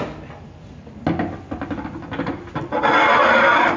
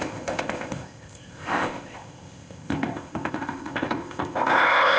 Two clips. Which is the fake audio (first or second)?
second